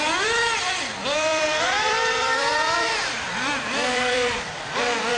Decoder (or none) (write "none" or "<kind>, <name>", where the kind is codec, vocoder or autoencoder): vocoder, BigVGAN v2